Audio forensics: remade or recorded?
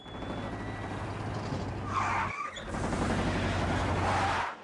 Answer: recorded